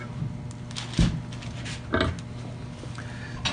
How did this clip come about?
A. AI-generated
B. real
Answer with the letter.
B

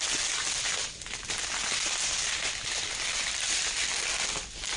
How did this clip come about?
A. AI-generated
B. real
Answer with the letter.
B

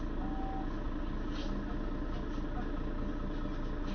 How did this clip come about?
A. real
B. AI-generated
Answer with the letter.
A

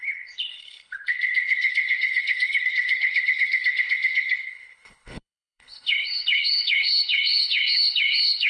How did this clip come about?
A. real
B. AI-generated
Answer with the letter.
B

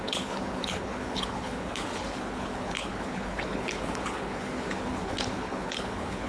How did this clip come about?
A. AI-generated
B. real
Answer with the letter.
A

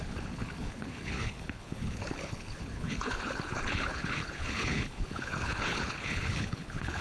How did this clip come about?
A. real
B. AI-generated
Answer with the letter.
B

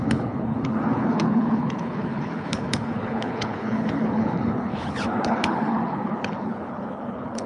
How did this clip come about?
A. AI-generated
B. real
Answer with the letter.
A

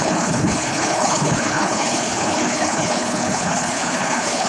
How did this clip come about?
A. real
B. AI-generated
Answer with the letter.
B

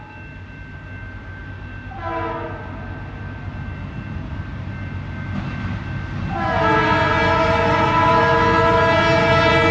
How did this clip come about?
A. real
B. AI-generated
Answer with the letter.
A